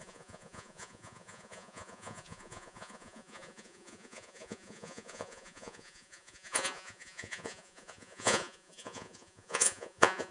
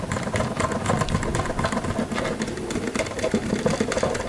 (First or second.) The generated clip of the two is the first